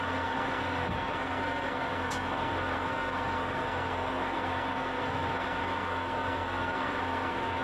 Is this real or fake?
fake